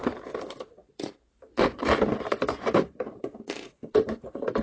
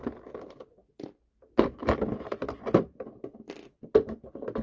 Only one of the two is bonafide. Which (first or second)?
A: second